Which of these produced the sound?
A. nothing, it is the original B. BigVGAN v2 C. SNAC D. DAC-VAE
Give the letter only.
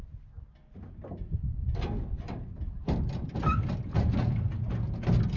A